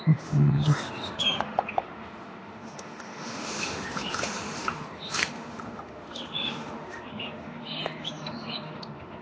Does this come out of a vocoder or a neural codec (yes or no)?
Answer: yes